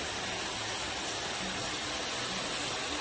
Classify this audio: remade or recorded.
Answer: recorded